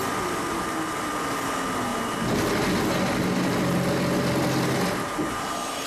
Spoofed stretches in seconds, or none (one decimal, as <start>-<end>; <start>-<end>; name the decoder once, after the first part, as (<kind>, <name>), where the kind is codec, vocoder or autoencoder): none